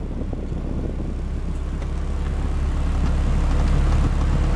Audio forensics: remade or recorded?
recorded